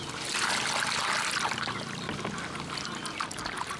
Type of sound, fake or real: real